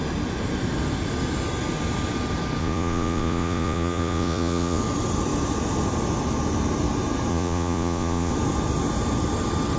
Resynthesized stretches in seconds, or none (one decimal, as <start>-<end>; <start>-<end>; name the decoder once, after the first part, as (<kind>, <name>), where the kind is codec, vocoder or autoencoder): 2.6-4.8 (vocoder, Vocos); 7.3-8.3